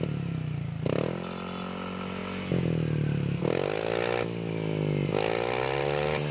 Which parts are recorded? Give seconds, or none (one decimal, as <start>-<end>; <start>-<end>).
0.0-6.3